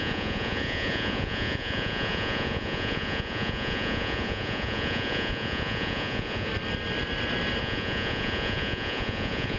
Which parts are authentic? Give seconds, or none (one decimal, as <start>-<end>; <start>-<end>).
6.5-7.6